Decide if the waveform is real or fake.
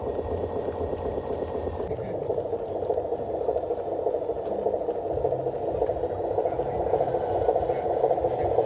real